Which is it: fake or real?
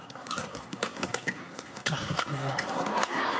fake